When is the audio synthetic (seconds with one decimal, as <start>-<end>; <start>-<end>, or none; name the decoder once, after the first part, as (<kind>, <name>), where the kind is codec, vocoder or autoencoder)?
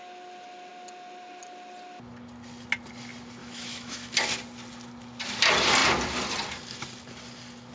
3.4-4.1 (autoencoder, DAC-VAE)